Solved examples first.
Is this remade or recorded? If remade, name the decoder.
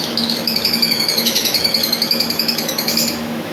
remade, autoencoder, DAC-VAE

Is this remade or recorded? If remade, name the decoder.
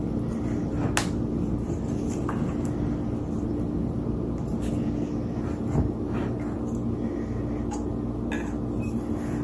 recorded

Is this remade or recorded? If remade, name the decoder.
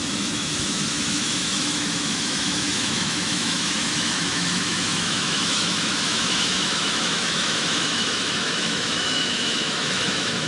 remade, autoencoder, DAC-VAE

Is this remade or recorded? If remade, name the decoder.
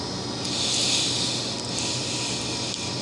recorded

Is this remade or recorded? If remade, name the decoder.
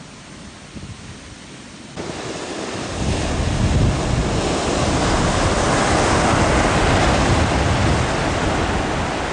recorded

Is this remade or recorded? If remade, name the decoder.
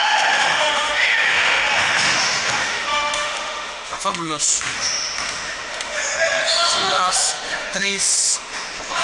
remade, autoencoder, DAC-VAE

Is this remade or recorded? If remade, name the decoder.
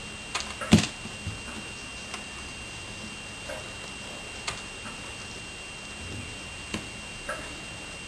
recorded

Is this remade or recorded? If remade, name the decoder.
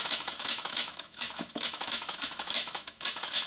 remade, autoencoder, DAC-VAE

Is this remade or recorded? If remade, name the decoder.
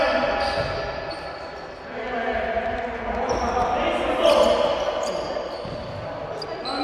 recorded